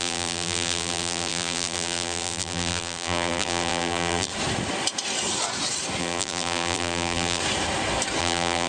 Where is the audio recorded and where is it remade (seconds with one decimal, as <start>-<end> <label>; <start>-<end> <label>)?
0.0-4.3 remade; 4.3-6.0 recorded; 6.0-7.4 remade; 7.4-8.2 recorded; 8.2-8.7 remade